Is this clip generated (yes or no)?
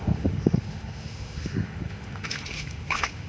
yes